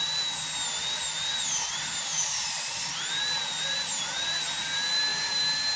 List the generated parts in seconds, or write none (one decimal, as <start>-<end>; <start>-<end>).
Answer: 2.1-2.9